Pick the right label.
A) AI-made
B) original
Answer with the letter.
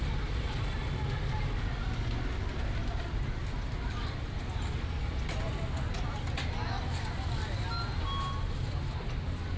B